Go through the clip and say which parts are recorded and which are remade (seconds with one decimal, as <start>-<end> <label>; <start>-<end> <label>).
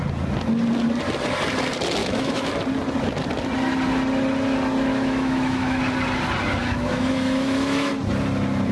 0.0-2.0 recorded; 2.0-2.5 remade; 2.5-4.9 recorded; 4.9-5.8 remade; 5.8-6.6 recorded; 6.6-7.9 remade; 7.9-8.7 recorded